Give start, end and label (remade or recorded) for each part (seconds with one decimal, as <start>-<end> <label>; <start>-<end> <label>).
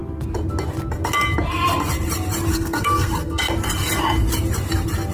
0.0-2.5 recorded; 2.5-3.5 remade; 3.5-5.1 recorded